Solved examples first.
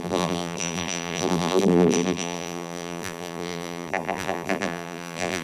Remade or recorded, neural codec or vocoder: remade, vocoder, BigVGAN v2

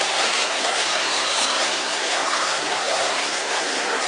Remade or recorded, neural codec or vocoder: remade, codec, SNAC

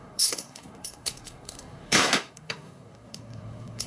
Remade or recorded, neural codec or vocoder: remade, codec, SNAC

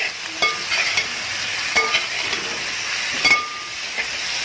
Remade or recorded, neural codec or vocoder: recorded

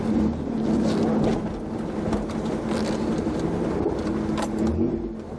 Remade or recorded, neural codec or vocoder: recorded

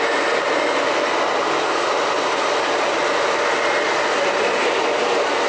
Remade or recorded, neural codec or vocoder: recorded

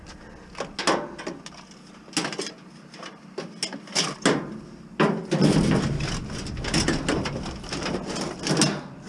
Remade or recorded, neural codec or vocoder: recorded